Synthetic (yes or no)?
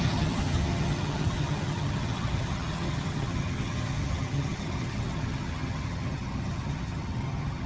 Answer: yes